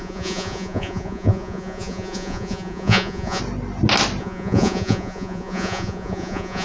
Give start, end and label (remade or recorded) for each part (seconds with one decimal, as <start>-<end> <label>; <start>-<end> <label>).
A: 0.0-3.4 remade; 3.4-4.2 recorded; 4.2-6.6 remade